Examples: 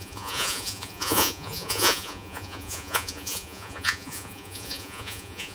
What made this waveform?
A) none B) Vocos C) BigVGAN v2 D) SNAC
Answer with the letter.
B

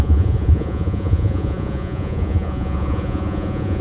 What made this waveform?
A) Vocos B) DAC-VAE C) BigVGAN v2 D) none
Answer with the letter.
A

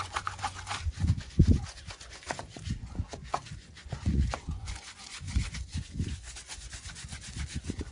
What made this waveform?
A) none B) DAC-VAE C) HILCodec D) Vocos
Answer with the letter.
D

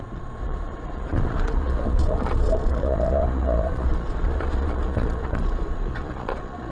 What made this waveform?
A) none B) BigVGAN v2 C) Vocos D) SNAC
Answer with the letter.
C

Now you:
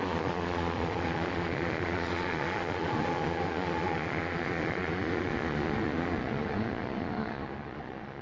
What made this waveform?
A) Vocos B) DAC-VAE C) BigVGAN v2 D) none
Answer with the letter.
A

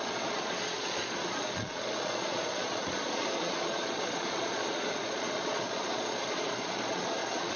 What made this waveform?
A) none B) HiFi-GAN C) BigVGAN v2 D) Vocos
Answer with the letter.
D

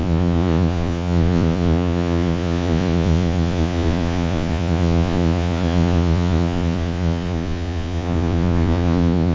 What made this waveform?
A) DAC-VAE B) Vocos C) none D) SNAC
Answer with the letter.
B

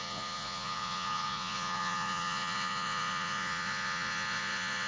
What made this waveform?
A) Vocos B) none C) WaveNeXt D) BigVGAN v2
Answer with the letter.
A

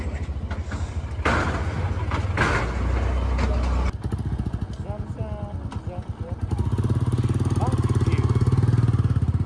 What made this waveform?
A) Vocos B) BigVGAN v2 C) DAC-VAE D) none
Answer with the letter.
D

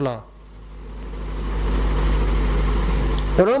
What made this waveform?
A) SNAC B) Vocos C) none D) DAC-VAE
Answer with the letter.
C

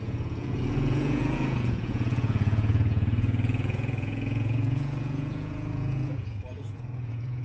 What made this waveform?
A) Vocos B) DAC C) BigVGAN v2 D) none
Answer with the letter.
A